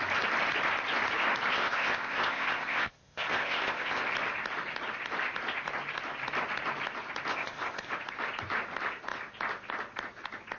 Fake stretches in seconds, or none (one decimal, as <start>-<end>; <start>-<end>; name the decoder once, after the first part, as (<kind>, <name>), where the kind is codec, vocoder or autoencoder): 1.5-4.0 (codec, ZipCodec); 7.3-7.9